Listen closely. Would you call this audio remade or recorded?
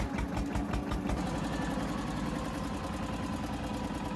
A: recorded